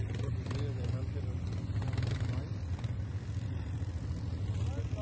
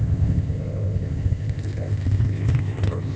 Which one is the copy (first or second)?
second